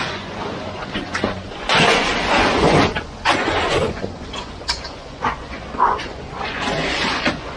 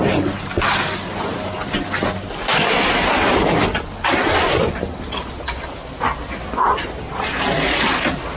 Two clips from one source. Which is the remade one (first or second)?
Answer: first